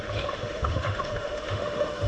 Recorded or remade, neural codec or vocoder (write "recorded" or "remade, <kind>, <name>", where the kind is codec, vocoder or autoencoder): remade, autoencoder, DAC-VAE